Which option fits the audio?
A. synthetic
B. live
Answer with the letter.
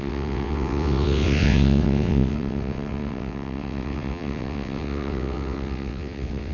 A